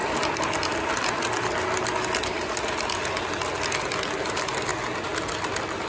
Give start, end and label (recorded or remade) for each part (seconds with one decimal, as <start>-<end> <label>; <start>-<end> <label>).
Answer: 0.0-5.9 recorded